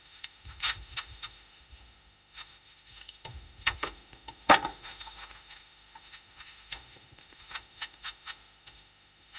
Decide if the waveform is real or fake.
fake